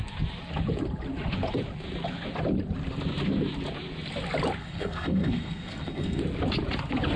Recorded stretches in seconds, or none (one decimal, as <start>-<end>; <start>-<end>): 0.0-4.6; 6.2-7.2